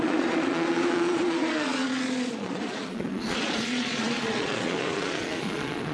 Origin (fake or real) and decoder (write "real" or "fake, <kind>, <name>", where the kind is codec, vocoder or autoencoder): fake, vocoder, Vocos